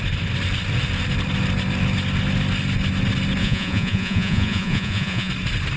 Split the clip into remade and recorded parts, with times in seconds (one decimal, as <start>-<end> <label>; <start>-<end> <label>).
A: 0.0-3.4 recorded; 3.4-5.3 remade; 5.3-5.8 recorded